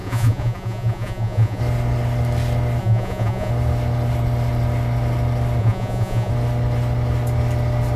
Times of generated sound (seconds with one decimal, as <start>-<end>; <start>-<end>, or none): 0.0-1.6; 2.8-3.5; 5.6-6.3